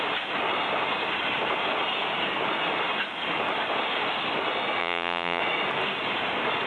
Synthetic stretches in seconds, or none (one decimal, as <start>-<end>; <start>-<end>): 4.8-5.4